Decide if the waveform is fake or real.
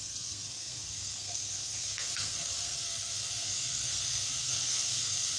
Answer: fake